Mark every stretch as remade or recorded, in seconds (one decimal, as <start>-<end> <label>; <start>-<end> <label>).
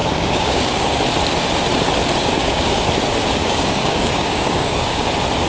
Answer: 0.0-1.0 remade; 1.0-2.2 recorded; 2.2-2.8 remade; 2.8-3.4 recorded; 3.4-5.1 remade; 5.1-5.5 recorded